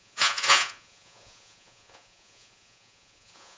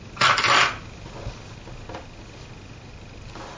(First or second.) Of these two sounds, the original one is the second